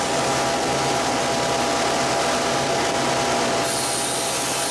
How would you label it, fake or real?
real